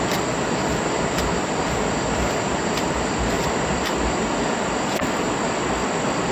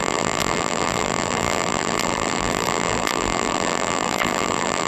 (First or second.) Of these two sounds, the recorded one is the first